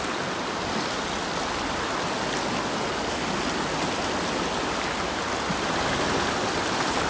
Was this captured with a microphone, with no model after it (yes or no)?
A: yes